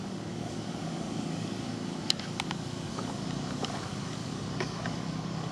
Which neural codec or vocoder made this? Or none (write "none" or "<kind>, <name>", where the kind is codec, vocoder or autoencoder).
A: codec, DAC